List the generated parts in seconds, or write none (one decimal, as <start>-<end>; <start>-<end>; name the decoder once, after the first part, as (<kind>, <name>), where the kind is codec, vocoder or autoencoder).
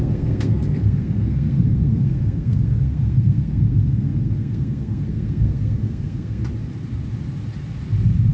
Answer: 0.0-6.4 (codec, SNAC)